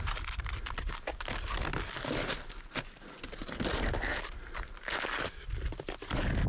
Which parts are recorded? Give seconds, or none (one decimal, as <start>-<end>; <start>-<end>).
0.0-6.5